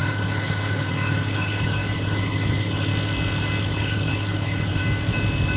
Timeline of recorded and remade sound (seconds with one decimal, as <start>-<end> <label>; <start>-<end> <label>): 0.0-2.9 remade; 2.9-3.6 recorded; 3.6-4.8 remade; 4.8-5.6 recorded